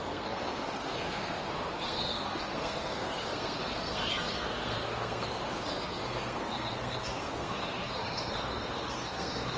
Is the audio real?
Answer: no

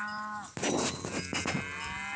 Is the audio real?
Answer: yes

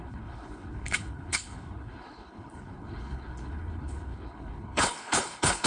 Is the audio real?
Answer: no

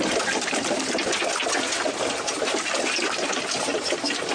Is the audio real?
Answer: yes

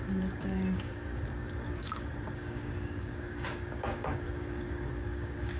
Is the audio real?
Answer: no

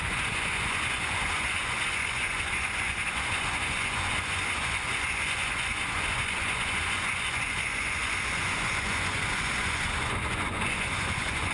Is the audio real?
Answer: no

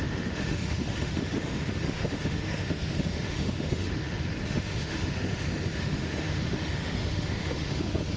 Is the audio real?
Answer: no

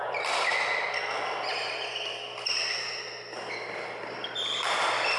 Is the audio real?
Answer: yes